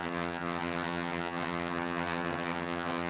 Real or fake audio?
fake